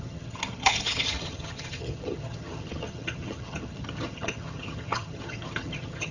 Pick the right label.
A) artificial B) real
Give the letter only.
A